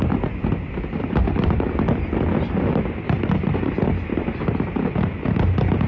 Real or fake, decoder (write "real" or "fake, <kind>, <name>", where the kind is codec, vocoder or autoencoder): fake, vocoder, BigVGAN v2